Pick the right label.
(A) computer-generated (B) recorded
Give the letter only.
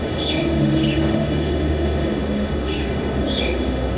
A